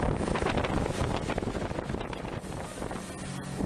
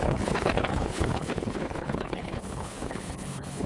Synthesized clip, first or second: second